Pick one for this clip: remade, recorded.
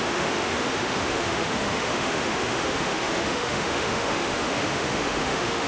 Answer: remade